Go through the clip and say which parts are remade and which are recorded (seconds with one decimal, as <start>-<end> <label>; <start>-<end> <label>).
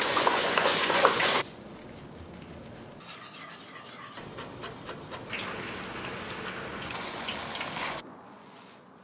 0.0-1.7 remade; 1.7-6.7 recorded; 6.7-7.3 remade; 7.3-7.8 recorded; 7.8-9.0 remade